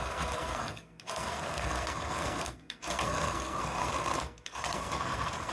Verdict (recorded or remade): remade